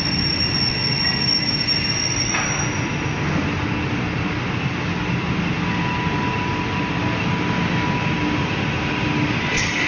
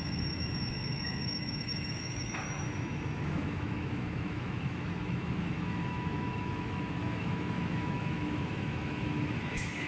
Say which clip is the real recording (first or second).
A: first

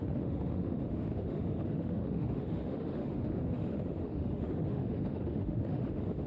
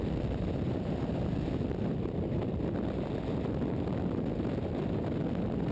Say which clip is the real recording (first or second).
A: second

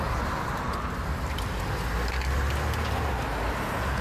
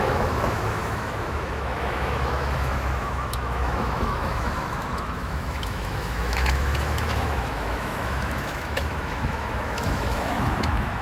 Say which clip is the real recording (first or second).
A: first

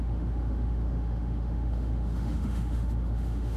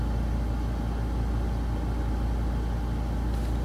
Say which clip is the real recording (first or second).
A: second